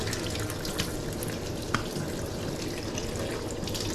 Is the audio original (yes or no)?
yes